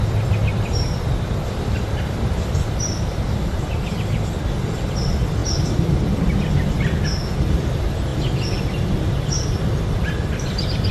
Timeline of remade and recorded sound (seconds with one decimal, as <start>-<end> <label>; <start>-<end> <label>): 0.0-5.4 remade; 5.4-6.7 recorded; 6.7-8.1 remade; 8.1-8.6 recorded; 8.6-10.9 remade